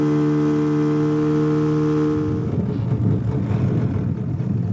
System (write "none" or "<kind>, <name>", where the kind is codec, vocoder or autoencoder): none